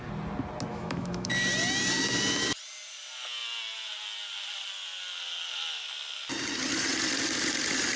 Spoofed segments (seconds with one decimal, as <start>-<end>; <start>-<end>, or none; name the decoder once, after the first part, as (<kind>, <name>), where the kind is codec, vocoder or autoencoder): 0.7-1.3 (autoencoder, DAC-VAE)